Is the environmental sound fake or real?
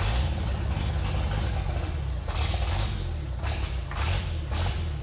real